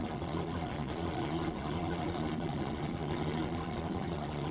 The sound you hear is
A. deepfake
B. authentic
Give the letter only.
A